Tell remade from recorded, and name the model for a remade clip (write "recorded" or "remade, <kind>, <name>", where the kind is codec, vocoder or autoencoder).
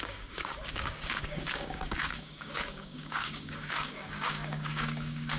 remade, codec, DAC